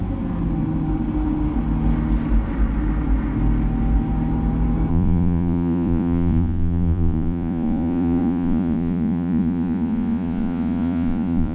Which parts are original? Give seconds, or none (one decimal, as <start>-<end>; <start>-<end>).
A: 0.0-4.9